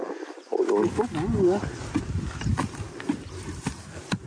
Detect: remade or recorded recorded